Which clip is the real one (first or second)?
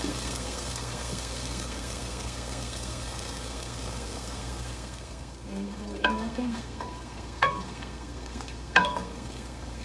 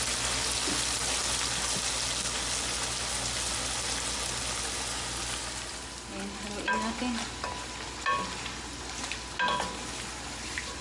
second